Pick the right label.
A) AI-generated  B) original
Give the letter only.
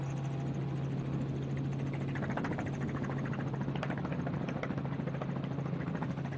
B